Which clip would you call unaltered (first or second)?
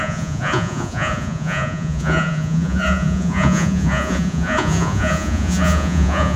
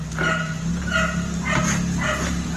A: second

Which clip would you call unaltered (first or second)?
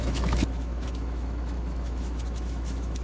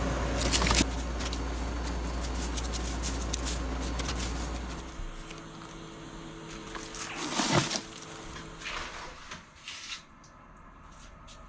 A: second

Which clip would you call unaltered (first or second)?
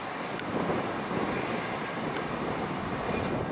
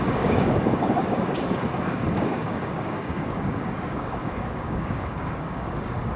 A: first